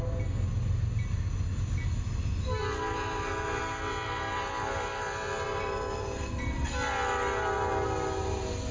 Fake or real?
real